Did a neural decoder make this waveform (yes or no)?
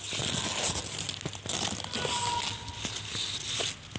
no